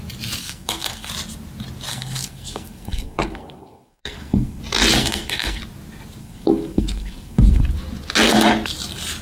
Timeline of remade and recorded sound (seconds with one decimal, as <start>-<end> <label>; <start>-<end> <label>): 0.0-0.4 recorded; 0.4-1.1 remade; 1.1-1.9 recorded; 1.9-4.6 remade; 4.6-5.0 recorded; 5.0-5.6 remade; 5.6-6.2 recorded; 6.2-7.6 remade; 7.6-9.2 recorded